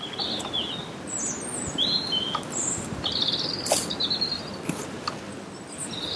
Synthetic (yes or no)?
no